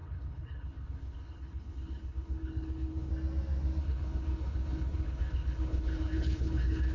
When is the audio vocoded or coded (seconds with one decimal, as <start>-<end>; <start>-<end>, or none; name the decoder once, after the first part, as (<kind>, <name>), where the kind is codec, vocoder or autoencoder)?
0.0-3.1 (codec, HILCodec); 3.8-6.9